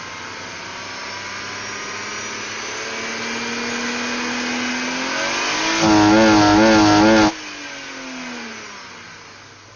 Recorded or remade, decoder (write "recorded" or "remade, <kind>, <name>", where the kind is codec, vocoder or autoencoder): recorded